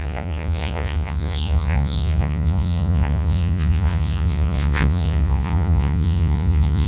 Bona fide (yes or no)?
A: no